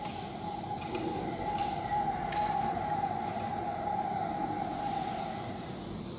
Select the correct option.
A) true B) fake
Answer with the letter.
A